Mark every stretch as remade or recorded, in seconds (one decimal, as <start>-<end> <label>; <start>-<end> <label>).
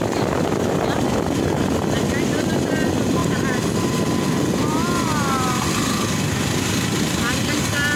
0.0-8.0 recorded